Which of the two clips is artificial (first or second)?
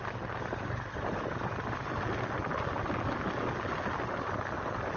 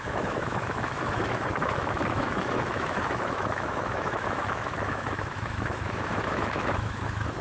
second